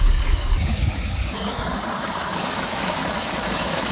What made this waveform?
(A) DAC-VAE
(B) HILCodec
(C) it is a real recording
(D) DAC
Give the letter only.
D